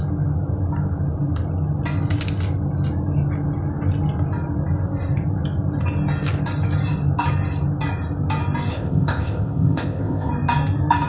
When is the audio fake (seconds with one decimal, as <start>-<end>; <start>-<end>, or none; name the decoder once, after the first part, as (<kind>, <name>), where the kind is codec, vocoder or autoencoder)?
8.7-10.3 (codec, ZipCodec)